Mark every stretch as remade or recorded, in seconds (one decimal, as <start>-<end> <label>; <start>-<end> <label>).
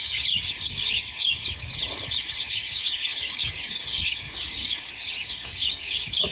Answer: 0.0-1.7 remade; 1.7-2.4 recorded; 2.4-6.3 remade